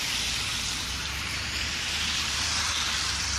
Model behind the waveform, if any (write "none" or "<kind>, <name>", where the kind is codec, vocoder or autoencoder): none